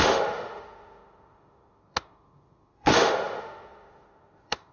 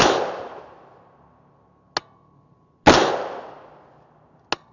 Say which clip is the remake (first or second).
first